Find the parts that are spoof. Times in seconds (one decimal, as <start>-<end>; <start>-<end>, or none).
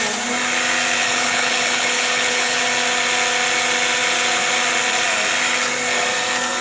1.0-2.6